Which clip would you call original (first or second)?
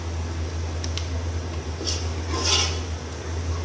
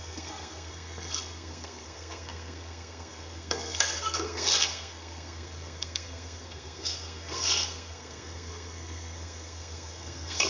first